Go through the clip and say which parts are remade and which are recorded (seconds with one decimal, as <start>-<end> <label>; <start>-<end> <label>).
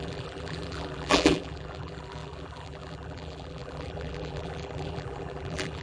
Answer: 0.0-5.8 remade